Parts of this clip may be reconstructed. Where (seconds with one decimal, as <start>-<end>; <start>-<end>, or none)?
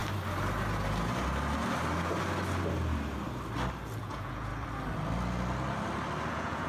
4.0-4.5; 6.3-6.7